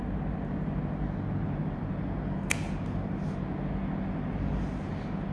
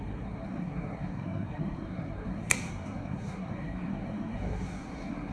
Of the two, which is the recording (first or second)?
first